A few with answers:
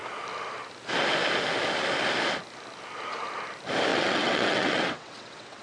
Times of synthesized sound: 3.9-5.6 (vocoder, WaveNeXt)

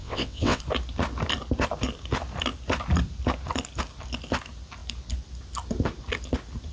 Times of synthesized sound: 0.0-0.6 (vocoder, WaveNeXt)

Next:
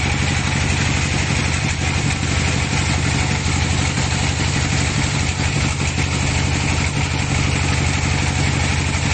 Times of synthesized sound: none

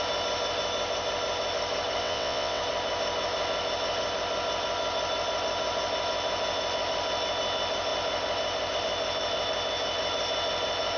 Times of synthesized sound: 2.0-2.6 (vocoder, WaveNeXt)

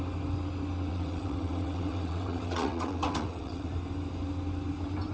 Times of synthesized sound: 0.9-3.7 (vocoder, WaveNeXt)